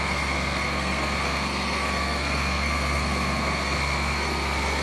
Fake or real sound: fake